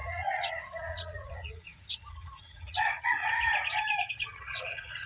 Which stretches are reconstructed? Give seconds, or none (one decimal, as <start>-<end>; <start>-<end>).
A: 0.0-5.1